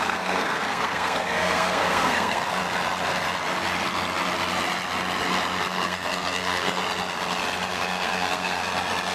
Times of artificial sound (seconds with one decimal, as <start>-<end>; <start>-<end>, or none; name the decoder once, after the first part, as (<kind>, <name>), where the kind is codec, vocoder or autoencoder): 0.0-2.6 (codec, SNAC); 5.6-6.8; 7.7-8.6